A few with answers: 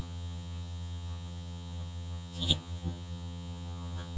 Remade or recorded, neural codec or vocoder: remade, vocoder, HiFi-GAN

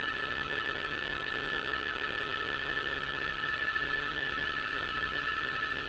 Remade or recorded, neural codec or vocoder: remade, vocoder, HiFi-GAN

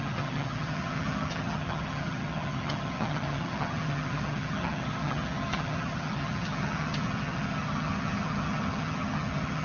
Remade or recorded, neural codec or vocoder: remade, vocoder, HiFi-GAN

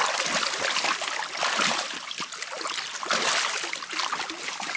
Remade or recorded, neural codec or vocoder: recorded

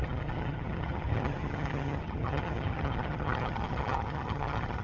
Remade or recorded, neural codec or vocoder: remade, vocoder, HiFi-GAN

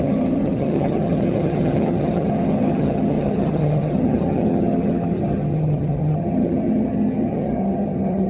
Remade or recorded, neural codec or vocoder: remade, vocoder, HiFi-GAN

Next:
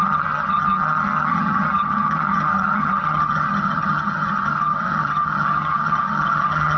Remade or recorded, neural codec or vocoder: remade, vocoder, HiFi-GAN